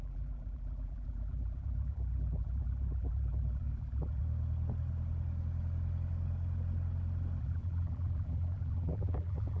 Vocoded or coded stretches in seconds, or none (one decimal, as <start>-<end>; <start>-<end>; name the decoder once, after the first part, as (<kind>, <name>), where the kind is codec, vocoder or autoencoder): 0.0-4.2 (vocoder, BigVGAN v2); 7.4-9.6